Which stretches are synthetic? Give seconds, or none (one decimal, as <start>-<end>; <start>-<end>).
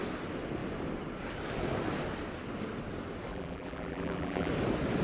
3.3-4.5